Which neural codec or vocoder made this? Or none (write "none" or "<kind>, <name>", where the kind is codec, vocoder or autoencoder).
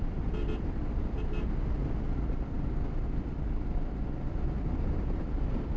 none